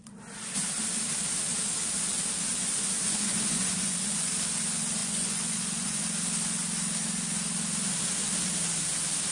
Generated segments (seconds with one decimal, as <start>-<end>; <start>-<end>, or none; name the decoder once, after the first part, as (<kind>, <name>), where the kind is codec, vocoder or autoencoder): 2.5-4.3 (vocoder, Vocos); 5.0-6.0